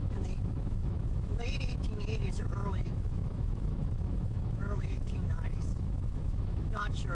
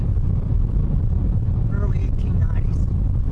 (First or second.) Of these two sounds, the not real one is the first